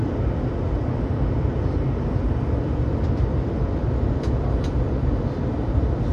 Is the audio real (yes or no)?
yes